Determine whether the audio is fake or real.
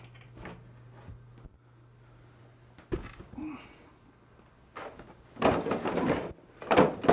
real